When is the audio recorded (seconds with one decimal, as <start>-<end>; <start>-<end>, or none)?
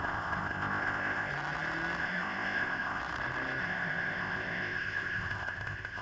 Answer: 1.3-2.0; 3.0-3.6